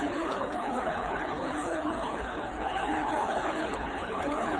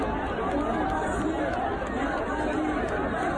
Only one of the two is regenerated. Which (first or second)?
first